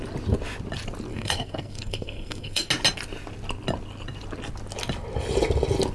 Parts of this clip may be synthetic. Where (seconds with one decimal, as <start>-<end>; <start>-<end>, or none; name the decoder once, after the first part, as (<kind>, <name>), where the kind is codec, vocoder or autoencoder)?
1.1-2.7 (codec, SNAC)

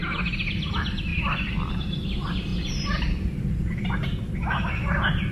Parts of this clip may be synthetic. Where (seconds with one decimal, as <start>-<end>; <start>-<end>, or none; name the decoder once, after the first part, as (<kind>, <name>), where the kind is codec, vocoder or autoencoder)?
1.1-1.7 (vocoder, BigVGAN v2); 2.5-3.9

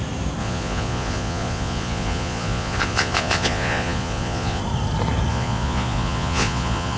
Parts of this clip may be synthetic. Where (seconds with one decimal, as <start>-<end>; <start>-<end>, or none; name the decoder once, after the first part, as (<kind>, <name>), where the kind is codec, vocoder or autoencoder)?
0.4-4.6 (vocoder, Vocos); 5.3-7.0

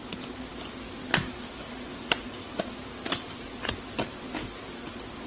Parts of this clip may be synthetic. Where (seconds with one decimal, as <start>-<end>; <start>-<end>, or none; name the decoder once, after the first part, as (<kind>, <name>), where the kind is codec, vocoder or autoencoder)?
0.5-3.7 (vocoder, BigVGAN v2)